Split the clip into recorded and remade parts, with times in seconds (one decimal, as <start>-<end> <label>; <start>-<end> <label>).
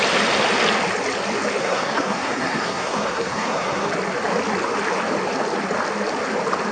0.0-1.6 recorded; 1.6-3.9 remade; 3.9-6.7 recorded